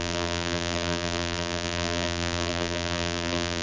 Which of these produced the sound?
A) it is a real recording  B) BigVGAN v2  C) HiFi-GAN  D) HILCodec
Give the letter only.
B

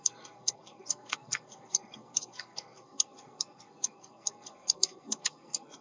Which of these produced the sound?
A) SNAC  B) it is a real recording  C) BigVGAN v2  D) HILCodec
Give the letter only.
A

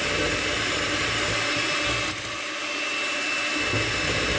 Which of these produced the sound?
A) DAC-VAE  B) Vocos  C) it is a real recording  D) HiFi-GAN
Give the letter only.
C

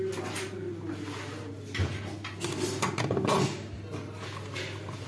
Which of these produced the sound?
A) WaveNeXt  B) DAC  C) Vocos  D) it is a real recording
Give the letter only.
D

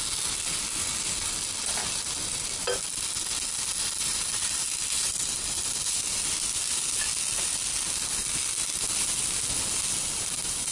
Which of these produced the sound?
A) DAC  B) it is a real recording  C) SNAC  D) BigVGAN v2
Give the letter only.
B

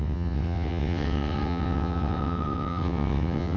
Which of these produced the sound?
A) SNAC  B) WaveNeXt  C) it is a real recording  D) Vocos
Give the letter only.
B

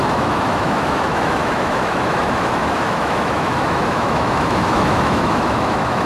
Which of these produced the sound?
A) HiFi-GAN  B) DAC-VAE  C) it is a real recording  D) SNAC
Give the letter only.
B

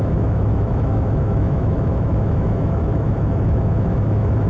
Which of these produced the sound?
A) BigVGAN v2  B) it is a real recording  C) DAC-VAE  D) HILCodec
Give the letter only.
C